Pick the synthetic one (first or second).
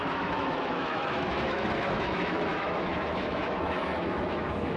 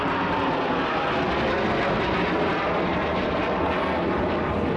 first